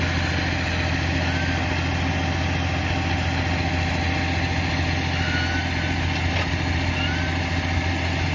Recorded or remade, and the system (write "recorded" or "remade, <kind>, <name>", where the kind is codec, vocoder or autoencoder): recorded